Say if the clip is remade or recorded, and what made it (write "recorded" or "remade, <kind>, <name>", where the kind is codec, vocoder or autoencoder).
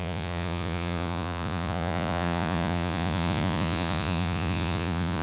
remade, vocoder, Vocos